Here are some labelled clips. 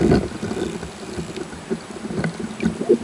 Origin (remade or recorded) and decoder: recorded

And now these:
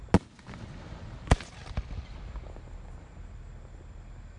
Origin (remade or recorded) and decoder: recorded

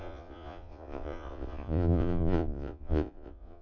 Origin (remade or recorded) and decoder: remade, vocoder, Vocos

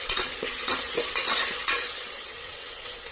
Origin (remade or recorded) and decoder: remade, vocoder, WaveNeXt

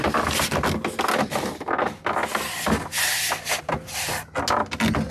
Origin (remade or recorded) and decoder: recorded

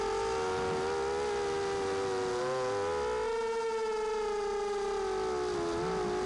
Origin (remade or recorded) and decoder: recorded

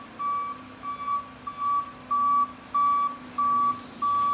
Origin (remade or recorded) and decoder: recorded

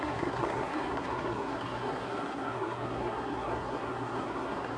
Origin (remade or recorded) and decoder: remade, codec, SNAC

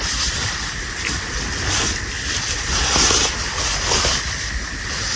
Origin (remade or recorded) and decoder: recorded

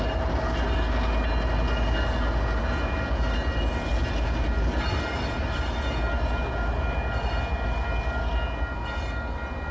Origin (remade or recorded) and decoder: recorded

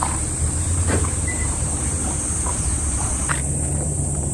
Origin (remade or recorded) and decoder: remade, vocoder, BigVGAN v2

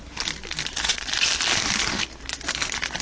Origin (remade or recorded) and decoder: recorded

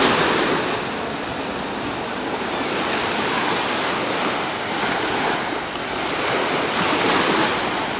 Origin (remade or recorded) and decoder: recorded